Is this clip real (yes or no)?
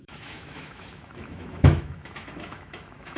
no